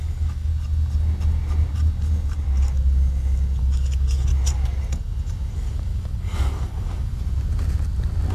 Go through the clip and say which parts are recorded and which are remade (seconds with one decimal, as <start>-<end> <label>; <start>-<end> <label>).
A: 0.0-0.5 remade; 0.5-3.6 recorded; 3.6-4.3 remade; 4.3-5.5 recorded; 5.5-7.1 remade; 7.1-8.3 recorded